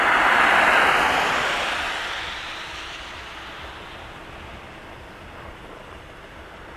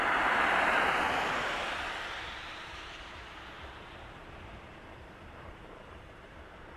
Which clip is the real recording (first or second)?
first